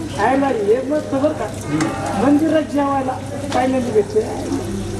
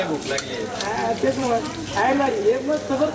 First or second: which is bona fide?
first